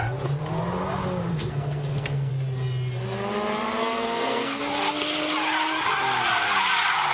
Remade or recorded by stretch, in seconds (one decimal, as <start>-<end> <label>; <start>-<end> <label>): 0.0-1.3 recorded; 1.3-2.3 remade; 2.3-3.8 recorded; 3.8-4.6 remade; 4.6-7.1 recorded